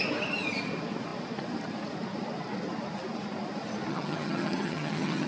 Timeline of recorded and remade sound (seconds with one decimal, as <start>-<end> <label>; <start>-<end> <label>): 0.0-3.9 recorded; 3.9-5.3 remade